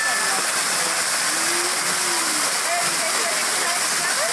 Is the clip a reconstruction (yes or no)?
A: no